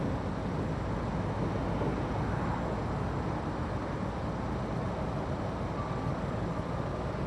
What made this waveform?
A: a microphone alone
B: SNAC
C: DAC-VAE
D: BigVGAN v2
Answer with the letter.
A